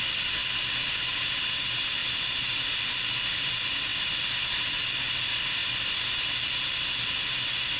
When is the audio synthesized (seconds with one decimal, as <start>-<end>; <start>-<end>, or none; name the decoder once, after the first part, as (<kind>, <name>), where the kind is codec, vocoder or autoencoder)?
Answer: none

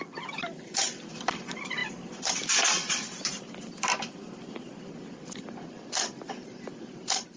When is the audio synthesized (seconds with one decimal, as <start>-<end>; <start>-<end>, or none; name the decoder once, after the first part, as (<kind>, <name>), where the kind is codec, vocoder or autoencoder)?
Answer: 0.0-4.7 (vocoder, BigVGAN v2); 5.2-7.4

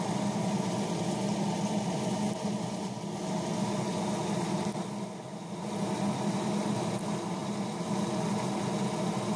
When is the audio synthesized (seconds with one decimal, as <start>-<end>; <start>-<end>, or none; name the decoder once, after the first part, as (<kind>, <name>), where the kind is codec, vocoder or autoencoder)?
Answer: none

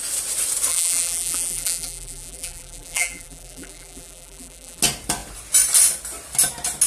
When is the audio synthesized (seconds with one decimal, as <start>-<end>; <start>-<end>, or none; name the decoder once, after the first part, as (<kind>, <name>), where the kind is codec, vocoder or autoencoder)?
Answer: 0.7-4.8 (vocoder, BigVGAN v2)

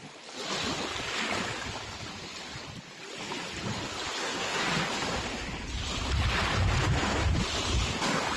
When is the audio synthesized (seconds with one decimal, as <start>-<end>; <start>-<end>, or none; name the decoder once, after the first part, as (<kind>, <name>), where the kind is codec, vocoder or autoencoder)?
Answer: 4.2-4.7 (codec, SNAC)

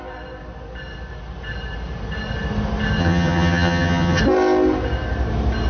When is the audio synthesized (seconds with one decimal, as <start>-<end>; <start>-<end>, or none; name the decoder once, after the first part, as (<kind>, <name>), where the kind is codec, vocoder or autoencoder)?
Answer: 3.0-4.2 (vocoder, HiFi-GAN)

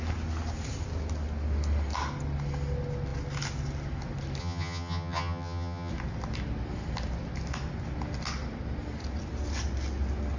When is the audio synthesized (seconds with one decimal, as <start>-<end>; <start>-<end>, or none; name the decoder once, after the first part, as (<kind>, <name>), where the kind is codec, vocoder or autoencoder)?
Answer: 4.4-5.9 (vocoder, HiFi-GAN)

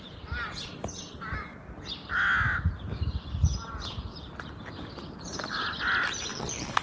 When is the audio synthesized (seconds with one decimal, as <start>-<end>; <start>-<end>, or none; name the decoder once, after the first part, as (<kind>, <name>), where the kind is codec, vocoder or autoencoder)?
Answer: 6.3-6.8 (vocoder, Vocos)